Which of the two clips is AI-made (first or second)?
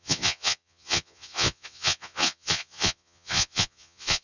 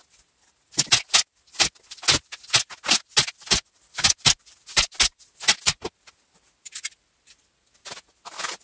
first